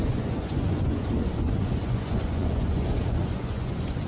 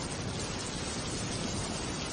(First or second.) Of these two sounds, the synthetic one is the first